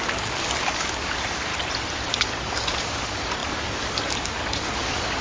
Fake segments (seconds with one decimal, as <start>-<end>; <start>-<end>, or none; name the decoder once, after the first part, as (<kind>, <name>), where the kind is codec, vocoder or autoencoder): 0.0-1.5 (codec, DAC); 2.1-5.2